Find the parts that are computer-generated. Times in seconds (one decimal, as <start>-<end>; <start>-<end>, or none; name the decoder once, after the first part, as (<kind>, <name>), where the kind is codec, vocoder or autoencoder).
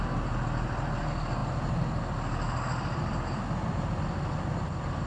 none